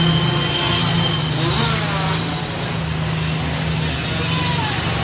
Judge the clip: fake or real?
real